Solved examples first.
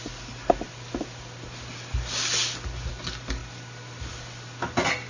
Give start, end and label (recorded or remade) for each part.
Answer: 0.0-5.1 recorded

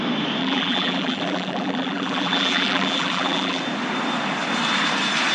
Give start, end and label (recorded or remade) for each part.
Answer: 0.0-0.4 recorded; 0.4-3.6 remade; 3.6-5.3 recorded

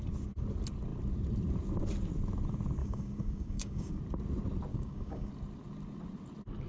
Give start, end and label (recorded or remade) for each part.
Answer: 0.0-2.8 recorded; 2.8-4.0 remade; 4.0-4.7 recorded; 4.7-5.3 remade; 5.3-6.7 recorded

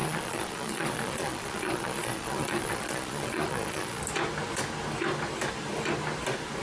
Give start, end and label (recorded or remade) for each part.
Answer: 0.0-4.0 remade; 4.0-6.6 recorded

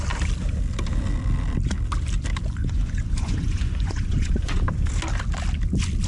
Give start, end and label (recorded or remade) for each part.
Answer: 0.0-2.6 recorded; 2.6-4.6 remade; 4.6-6.1 recorded

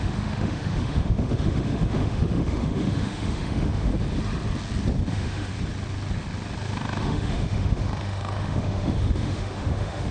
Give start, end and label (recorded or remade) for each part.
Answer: 0.0-3.9 remade; 3.9-5.1 recorded; 5.1-5.5 remade; 5.5-7.0 recorded; 7.0-10.1 remade

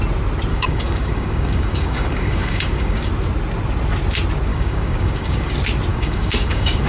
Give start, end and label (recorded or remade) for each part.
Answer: 0.0-0.5 recorded; 0.5-3.1 remade; 3.1-4.5 recorded; 4.5-5.5 remade; 5.5-5.9 recorded; 5.9-6.9 remade

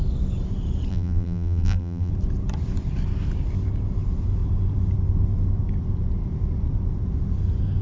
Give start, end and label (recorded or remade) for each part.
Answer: 0.0-0.9 recorded; 0.9-2.1 remade; 2.1-7.8 recorded